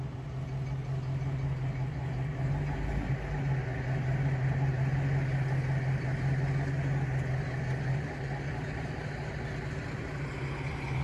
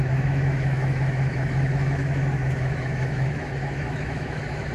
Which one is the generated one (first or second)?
second